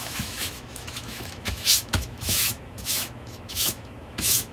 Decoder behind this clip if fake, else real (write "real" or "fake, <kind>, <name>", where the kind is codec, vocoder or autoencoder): fake, autoencoder, DAC-VAE